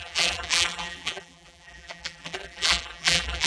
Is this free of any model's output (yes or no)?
no